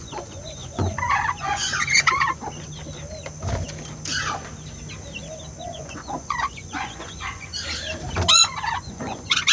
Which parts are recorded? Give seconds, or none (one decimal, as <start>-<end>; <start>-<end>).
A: 2.4-5.7; 7.5-8.3

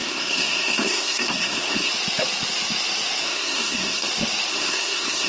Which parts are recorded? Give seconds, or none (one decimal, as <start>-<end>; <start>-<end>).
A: 1.9-3.2; 4.1-4.5

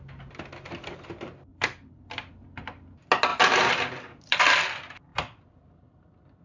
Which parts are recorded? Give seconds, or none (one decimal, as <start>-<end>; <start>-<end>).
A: 0.0-1.5; 2.3-3.3; 4.6-5.1

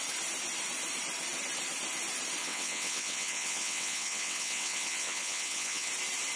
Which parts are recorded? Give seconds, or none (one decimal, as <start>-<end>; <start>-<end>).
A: 0.0-2.4; 5.9-6.4

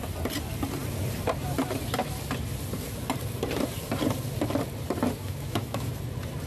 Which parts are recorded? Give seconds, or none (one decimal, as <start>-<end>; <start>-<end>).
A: 0.0-5.2; 5.9-6.5

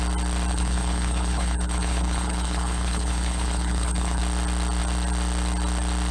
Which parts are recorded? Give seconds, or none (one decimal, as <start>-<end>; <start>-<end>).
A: 0.0-0.5; 4.2-6.1